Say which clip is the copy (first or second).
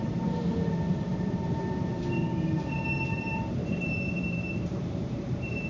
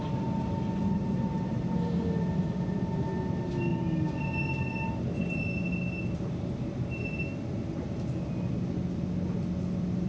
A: first